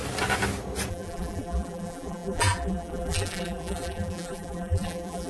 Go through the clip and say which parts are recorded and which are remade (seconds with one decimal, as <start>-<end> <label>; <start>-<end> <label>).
0.0-0.9 recorded; 0.9-5.3 remade